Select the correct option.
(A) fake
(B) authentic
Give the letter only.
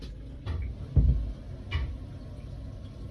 B